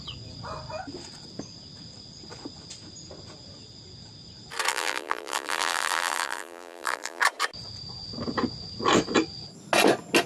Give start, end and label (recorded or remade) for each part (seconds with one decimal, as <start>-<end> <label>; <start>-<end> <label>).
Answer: 0.0-4.7 recorded; 4.7-7.2 remade; 7.2-10.3 recorded